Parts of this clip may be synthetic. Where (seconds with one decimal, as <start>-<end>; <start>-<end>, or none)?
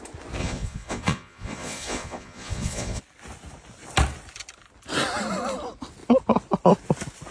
0.4-3.0